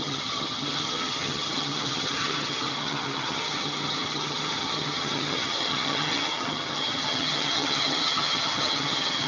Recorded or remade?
remade